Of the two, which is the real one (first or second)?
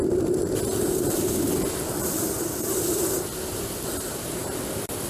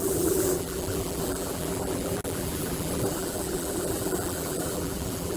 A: first